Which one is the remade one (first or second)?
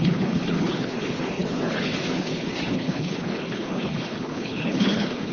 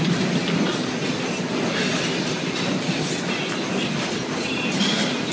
first